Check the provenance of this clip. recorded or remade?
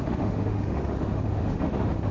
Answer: remade